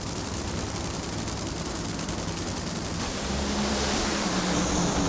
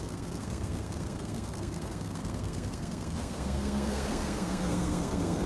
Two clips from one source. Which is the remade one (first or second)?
second